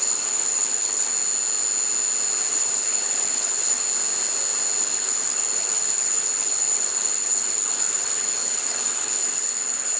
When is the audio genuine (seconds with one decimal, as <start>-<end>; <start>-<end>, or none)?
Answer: 1.1-2.5; 3.8-4.8

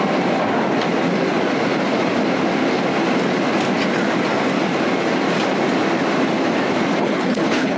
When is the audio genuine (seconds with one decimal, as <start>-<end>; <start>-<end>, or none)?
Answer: 0.0-7.0

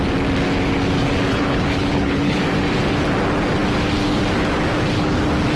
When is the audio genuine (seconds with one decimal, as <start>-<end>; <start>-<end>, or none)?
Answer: 0.0-1.3; 2.4-5.6

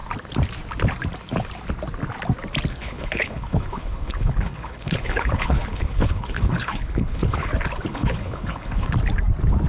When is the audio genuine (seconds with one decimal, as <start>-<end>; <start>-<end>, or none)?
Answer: 0.0-2.7; 7.5-7.9; 8.9-9.7

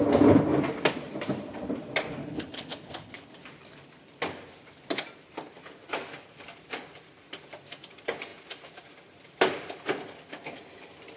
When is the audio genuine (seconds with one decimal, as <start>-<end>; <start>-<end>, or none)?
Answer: 0.0-2.2; 3.3-11.2

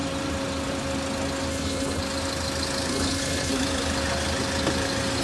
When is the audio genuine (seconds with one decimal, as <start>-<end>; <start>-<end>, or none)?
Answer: 0.0-1.5; 2.0-2.9; 3.5-5.2